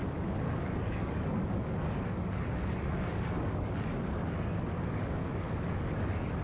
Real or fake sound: fake